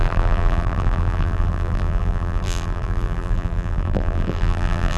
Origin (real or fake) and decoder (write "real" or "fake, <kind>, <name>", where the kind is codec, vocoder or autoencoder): fake, vocoder, BigVGAN v2